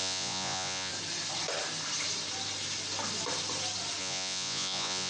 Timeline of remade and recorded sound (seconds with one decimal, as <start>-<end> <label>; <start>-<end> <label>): 0.0-0.9 remade; 0.9-4.0 recorded; 4.0-5.1 remade